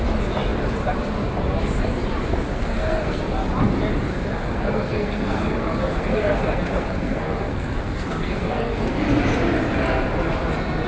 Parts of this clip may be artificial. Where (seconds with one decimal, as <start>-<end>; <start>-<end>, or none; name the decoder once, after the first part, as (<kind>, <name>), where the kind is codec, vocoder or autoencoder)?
2.5-3.2 (codec, SNAC); 4.1-9.0